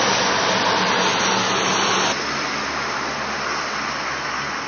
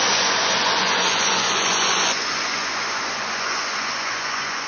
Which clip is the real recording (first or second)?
first